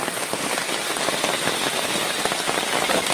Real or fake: real